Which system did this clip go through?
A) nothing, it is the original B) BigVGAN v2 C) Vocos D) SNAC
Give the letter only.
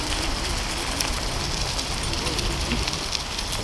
A